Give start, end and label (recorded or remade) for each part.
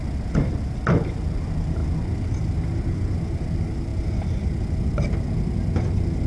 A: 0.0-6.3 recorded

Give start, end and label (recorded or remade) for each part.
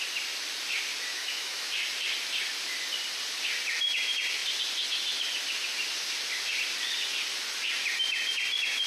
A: 0.0-1.1 recorded; 1.1-1.7 remade; 1.7-8.9 recorded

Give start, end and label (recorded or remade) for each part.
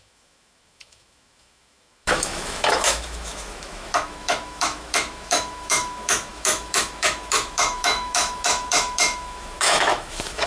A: 0.0-10.5 remade